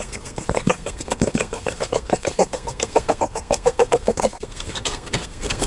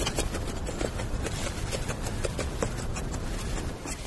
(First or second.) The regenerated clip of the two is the first